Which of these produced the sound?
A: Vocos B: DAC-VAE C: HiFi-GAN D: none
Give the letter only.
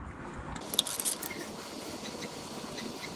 D